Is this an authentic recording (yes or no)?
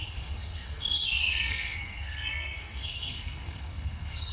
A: no